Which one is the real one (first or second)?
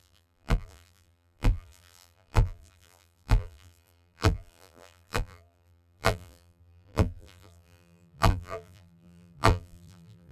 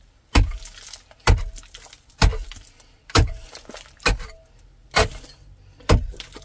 second